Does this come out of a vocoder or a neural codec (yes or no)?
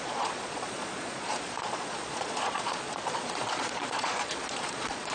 yes